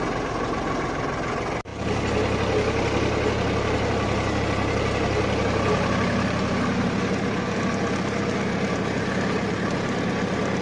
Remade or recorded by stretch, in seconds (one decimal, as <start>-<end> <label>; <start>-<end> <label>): 0.0-10.6 recorded

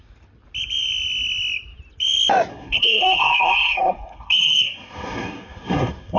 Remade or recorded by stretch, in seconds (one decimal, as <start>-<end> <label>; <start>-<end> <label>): 0.0-2.5 recorded; 2.5-6.2 remade

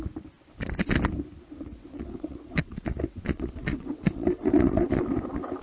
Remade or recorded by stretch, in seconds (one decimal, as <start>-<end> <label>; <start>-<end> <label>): 0.0-1.7 recorded; 1.7-5.0 remade; 5.0-5.6 recorded

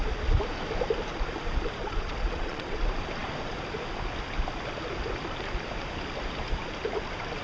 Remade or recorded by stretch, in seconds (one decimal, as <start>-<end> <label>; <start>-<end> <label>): 0.0-1.8 recorded; 1.8-2.8 remade; 2.8-7.4 recorded

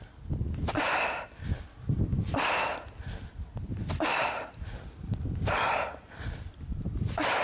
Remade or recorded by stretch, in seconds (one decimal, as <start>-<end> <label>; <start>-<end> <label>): 0.0-2.7 remade; 2.7-4.9 recorded; 4.9-7.4 remade

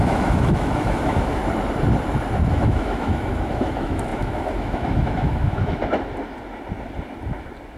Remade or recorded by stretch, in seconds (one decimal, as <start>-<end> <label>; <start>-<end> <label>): 0.0-1.4 remade; 1.4-2.5 recorded; 2.5-5.8 remade; 5.8-7.8 recorded

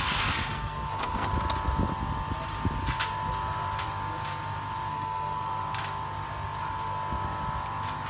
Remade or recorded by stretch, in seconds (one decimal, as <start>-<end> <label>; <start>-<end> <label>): 0.0-1.3 remade; 1.3-4.9 recorded; 4.9-5.6 remade; 5.6-8.1 recorded

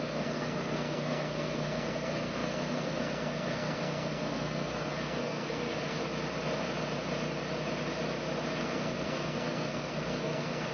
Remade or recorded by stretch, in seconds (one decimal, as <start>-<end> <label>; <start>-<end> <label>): 0.0-6.0 remade; 6.0-8.6 recorded; 8.6-10.7 remade